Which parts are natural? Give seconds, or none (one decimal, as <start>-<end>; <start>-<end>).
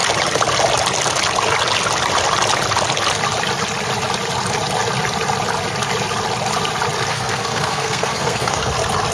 0.0-7.1; 8.7-9.1